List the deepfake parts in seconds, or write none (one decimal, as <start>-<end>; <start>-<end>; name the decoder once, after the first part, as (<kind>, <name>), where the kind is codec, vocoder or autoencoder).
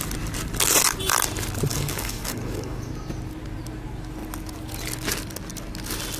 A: 1.7-2.9 (codec, DAC)